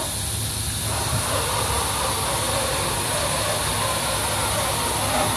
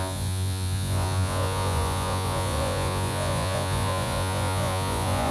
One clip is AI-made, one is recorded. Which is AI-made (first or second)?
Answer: second